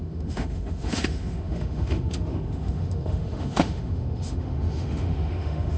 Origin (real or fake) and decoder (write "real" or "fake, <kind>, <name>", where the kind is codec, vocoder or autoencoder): fake, autoencoder, DAC-VAE